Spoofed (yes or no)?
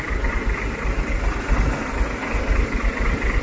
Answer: no